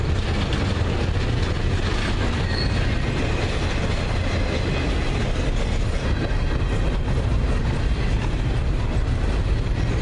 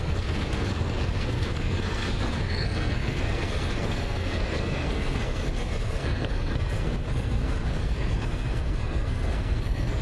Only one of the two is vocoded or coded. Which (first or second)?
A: second